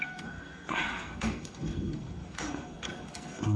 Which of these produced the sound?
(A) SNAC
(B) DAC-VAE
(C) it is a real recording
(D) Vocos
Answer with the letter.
A